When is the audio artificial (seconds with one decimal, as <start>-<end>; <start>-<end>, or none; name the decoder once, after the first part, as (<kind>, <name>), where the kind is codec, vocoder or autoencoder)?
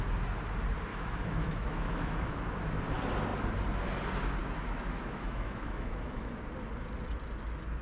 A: 0.9-2.6 (autoencoder, DAC-VAE); 4.4-6.3